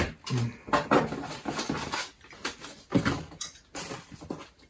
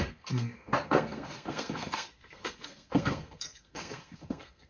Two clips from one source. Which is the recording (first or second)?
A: first